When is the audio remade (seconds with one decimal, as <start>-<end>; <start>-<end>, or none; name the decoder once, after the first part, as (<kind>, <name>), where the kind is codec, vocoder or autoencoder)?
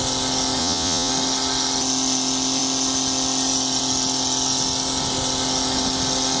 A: 0.6-1.1 (vocoder, Vocos)